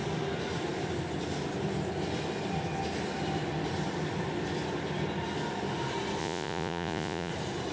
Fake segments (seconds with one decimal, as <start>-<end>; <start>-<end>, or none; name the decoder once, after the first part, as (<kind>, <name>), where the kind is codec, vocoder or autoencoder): 6.2-7.3 (vocoder, Vocos)